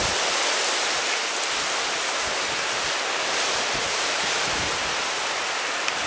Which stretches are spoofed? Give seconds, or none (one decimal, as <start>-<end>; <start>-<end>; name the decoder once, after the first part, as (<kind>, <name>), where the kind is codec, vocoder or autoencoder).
none